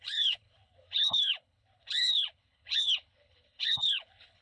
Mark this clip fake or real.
fake